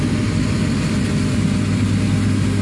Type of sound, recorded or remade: recorded